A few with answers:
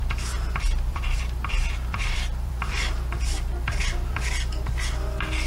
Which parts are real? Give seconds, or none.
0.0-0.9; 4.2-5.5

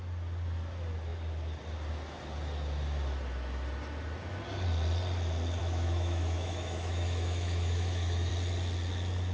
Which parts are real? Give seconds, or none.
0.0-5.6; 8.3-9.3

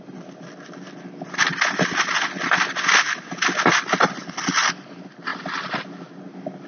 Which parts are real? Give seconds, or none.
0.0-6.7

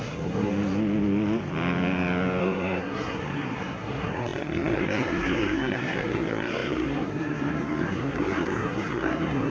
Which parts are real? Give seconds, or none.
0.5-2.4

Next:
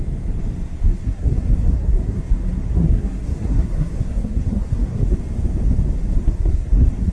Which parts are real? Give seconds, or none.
0.0-0.9; 5.2-6.1

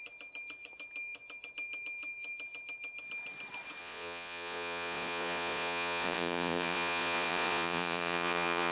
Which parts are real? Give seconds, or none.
0.0-3.8

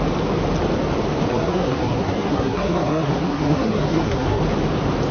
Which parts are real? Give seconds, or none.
0.0-1.3; 4.4-5.1